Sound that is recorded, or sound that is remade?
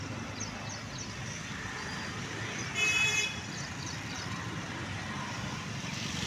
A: recorded